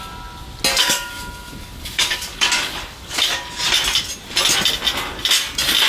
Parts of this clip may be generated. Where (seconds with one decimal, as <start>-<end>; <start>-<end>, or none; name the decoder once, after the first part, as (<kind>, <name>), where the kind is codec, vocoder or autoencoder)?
0.7-3.6 (codec, DAC)